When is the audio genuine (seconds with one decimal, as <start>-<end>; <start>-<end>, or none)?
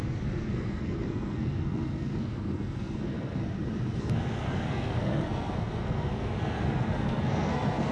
3.4-4.0